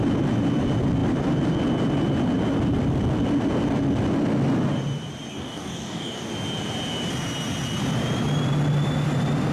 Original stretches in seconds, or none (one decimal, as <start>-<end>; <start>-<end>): 0.0-5.3; 6.3-9.5